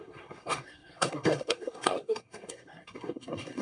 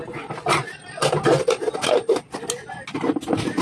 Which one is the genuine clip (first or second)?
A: second